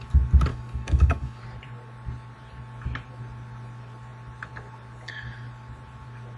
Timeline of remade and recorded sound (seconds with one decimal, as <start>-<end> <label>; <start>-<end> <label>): 0.0-0.5 recorded; 0.5-1.4 remade; 1.4-6.4 recorded